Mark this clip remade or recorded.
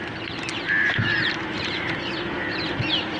recorded